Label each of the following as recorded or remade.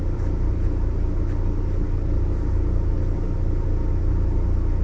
recorded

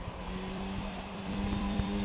remade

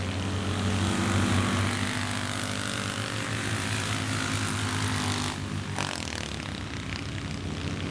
recorded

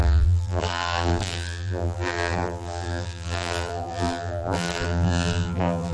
remade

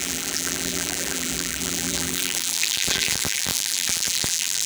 remade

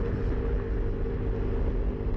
recorded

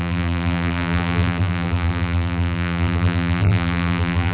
remade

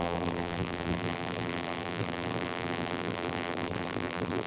remade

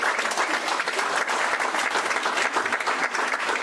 recorded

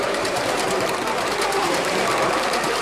remade